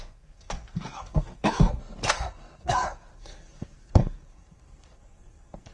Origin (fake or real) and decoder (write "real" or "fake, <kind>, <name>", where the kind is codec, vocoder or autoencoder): fake, codec, SNAC